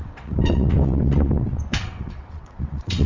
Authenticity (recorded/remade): remade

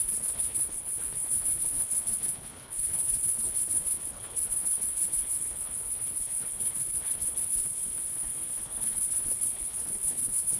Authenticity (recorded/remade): remade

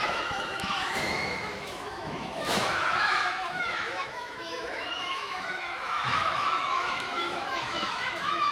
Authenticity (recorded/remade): remade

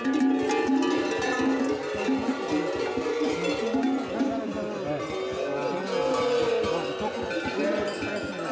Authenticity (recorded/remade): recorded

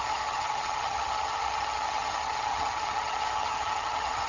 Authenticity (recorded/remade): remade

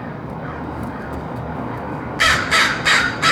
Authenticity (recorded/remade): remade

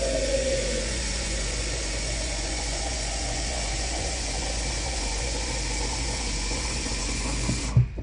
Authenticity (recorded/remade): remade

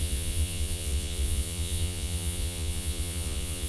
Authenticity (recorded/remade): remade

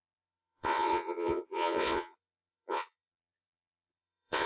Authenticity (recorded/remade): remade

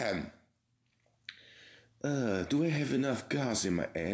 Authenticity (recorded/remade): recorded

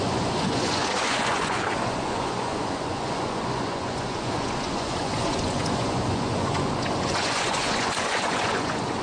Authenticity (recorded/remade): remade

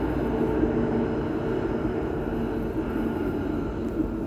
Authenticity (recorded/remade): recorded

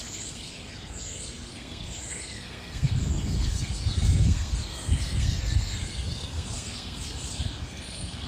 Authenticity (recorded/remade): remade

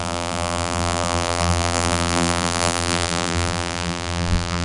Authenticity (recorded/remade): remade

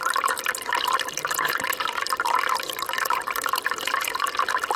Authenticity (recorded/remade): remade